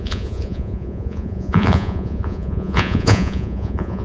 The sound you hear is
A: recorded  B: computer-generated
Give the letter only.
B